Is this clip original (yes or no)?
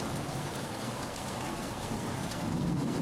no